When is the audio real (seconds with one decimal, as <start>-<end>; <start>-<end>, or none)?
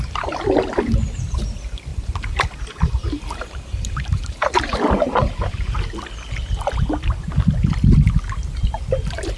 0.0-1.9; 5.8-9.4